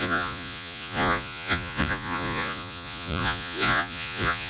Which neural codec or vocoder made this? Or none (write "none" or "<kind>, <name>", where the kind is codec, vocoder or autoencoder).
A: vocoder, Vocos